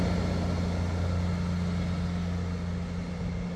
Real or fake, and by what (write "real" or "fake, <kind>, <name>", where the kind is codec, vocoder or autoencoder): real